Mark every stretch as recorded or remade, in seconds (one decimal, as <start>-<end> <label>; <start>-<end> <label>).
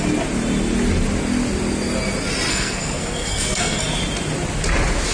0.0-2.5 recorded; 2.5-3.8 remade; 3.8-5.1 recorded